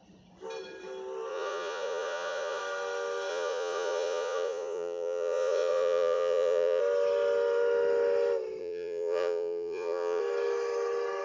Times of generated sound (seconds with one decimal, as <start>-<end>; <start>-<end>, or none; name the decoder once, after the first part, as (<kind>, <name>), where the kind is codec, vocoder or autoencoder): 1.3-2.6 (vocoder, Vocos); 3.3-6.8; 8.6-10.2